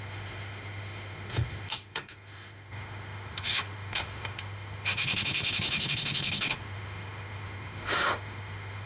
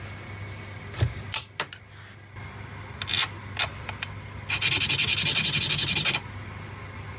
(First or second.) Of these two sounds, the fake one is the first